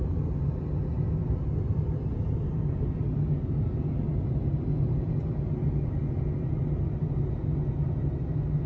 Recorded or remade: recorded